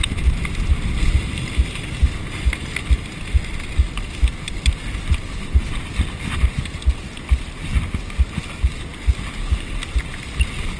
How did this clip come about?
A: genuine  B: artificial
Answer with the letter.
A